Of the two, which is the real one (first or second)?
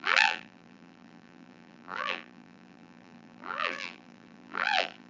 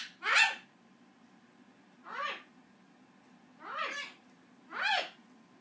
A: second